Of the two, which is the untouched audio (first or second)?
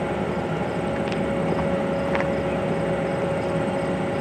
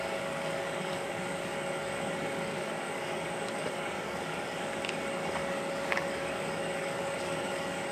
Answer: first